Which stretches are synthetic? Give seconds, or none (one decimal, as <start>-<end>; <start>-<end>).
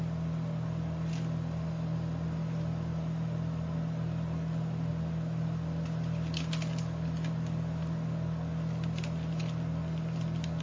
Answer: none